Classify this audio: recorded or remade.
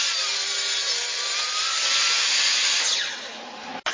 recorded